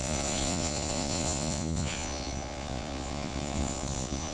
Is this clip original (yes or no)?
no